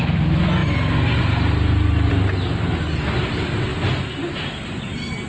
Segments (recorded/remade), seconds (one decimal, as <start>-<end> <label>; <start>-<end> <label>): 0.0-5.3 recorded